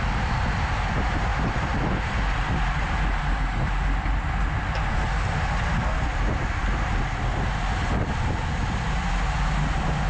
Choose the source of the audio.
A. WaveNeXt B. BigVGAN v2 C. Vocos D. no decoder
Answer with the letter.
D